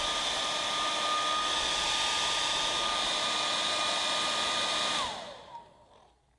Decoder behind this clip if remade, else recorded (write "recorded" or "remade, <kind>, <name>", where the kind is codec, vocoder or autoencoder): recorded